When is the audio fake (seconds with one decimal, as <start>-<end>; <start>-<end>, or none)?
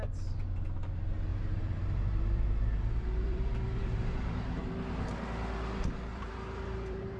1.3-4.7; 6.1-7.2